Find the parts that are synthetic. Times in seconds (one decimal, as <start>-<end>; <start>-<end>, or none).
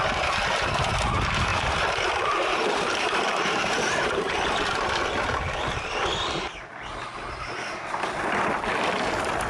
1.5-4.9